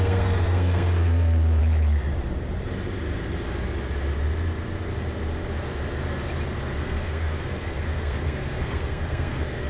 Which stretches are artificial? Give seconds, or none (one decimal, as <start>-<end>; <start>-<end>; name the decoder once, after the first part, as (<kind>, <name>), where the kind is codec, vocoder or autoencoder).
0.0-1.6 (codec, SNAC); 6.8-9.7